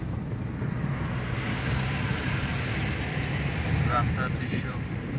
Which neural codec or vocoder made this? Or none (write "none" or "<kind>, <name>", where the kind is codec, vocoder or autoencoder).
vocoder, BigVGAN v2